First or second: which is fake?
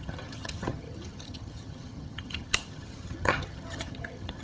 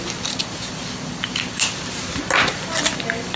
first